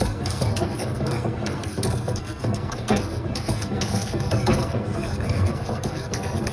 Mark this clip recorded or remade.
remade